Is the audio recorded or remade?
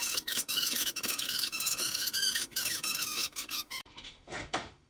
remade